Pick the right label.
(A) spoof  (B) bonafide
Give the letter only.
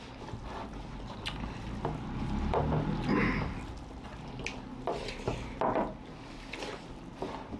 B